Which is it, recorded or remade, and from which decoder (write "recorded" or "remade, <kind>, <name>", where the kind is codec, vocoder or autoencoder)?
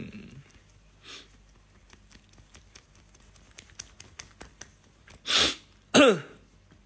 recorded